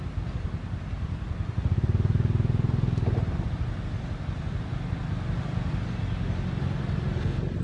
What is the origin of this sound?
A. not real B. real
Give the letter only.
B